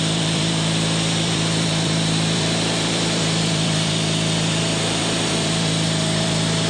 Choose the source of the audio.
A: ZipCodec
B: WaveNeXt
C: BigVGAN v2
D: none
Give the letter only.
C